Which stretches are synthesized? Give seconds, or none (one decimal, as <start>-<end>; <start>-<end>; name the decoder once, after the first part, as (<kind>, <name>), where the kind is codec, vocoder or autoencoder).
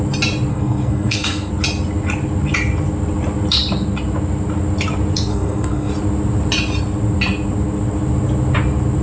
0.5-1.5 (codec, SNAC); 5.3-5.9